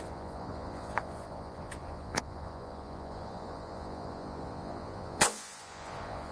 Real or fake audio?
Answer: fake